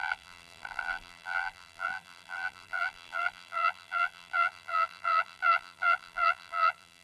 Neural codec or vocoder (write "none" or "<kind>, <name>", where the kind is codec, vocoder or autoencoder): vocoder, BigVGAN v2